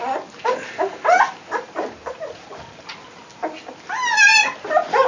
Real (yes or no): yes